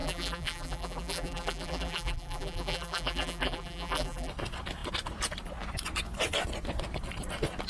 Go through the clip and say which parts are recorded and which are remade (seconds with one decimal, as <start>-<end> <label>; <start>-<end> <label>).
0.0-4.3 remade; 4.3-7.7 recorded